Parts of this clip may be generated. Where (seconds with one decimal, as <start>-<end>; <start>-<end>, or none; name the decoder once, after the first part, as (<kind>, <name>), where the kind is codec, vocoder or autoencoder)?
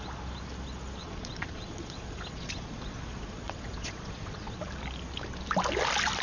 1.0-4.7 (vocoder, Vocos)